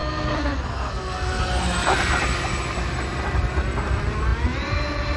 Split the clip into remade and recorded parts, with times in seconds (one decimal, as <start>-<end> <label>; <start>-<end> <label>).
0.0-1.4 remade; 1.4-5.2 recorded